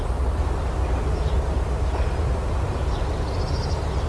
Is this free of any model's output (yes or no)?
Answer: yes